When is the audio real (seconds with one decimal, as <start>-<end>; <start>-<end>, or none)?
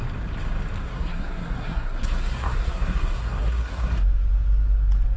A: 0.0-0.8; 3.9-5.2